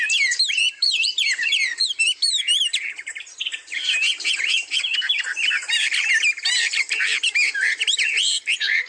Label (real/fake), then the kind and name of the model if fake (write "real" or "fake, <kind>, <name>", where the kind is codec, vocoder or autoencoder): fake, vocoder, BigVGAN v2